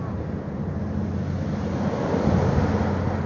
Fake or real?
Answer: real